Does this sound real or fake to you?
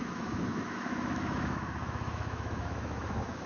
fake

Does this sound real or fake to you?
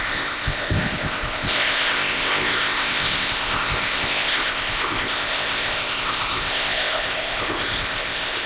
fake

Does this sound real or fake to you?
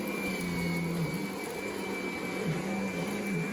real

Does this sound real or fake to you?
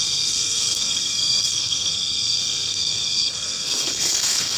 fake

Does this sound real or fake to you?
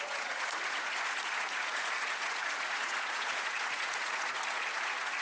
fake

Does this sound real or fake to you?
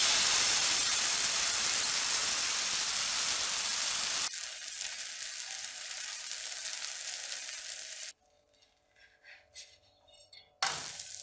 real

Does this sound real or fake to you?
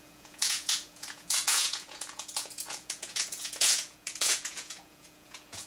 fake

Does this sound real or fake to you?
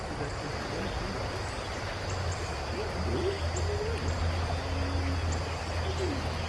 real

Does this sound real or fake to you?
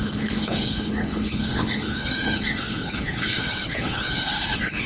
fake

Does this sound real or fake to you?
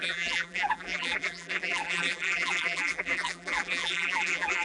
fake